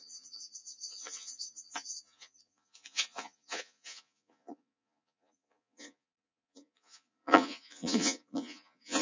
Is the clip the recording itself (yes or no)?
no